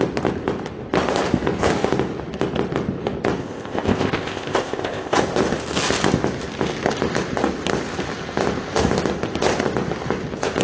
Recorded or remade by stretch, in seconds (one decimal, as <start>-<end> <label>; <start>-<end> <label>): 0.0-3.4 recorded; 3.4-5.2 remade; 5.2-10.6 recorded